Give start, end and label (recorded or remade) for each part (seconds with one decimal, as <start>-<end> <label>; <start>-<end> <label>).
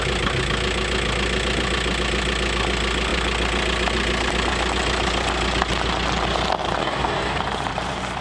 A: 0.0-6.8 recorded; 6.8-7.4 remade; 7.4-8.2 recorded